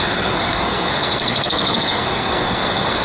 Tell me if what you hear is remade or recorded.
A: remade